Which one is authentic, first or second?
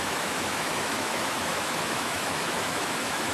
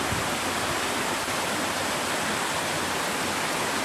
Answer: second